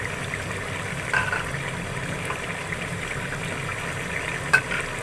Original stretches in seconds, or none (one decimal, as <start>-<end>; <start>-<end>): 0.0-5.0